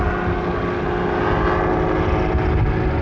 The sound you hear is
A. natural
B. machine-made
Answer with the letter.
A